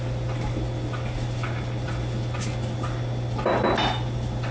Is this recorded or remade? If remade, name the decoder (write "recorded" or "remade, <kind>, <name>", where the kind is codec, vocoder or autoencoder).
recorded